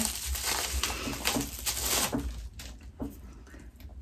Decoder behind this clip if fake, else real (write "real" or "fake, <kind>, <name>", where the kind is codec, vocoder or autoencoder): real